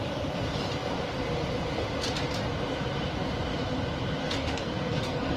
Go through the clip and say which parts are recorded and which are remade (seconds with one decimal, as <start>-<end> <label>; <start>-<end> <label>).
0.0-4.2 recorded; 4.2-5.4 remade